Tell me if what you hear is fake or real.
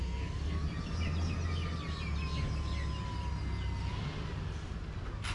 real